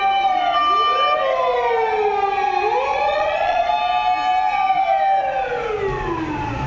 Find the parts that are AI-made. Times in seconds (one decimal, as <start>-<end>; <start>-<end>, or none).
2.9-3.7